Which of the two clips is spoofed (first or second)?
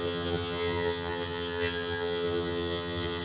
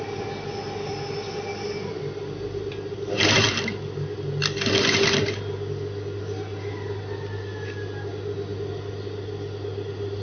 first